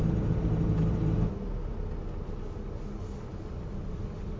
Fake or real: real